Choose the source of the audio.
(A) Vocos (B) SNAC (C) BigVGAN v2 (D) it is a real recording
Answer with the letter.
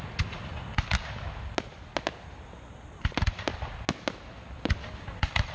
D